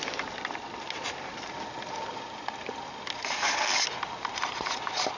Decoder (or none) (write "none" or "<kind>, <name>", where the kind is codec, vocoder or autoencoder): none